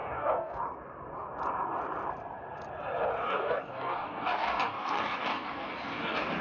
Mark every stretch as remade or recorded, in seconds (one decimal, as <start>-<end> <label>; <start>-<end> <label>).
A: 0.0-0.6 remade; 0.6-3.2 recorded; 3.2-6.4 remade